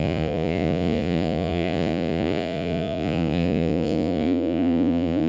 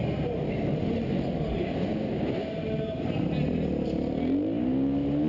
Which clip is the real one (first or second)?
second